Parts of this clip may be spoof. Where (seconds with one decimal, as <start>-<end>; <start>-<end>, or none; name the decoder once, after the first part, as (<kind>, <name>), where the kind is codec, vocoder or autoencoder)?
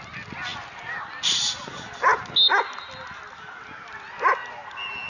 none